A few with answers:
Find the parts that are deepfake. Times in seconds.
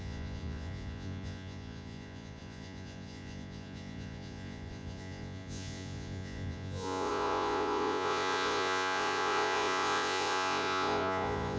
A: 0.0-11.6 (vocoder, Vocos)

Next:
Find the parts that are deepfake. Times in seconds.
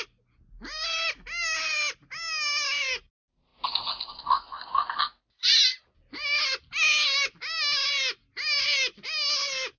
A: none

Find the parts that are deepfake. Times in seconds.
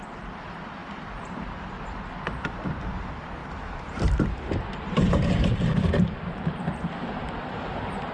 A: 0.8-1.7 (vocoder, BigVGAN v2); 3.4-8.1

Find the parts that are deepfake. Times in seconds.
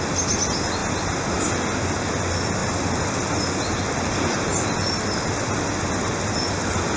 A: none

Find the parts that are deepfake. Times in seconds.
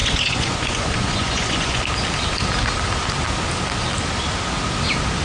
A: 0.0-1.8 (vocoder, Vocos)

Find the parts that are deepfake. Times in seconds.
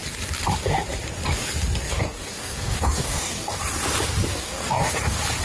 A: 1.8-3.6 (codec, DAC); 4.3-4.9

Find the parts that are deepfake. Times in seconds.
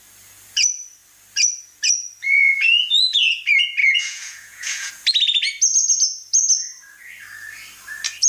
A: 2.2-3.3 (vocoder, Vocos); 3.8-4.9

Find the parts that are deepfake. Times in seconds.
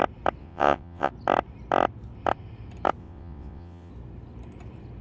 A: 0.4-1.1 (vocoder, WaveNeXt); 3.0-3.9